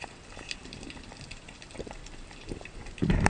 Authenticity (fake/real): fake